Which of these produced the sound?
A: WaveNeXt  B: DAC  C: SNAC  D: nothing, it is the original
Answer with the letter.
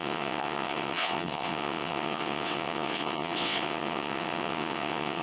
A